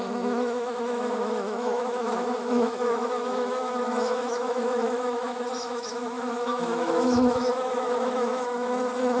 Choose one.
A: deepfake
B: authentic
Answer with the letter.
A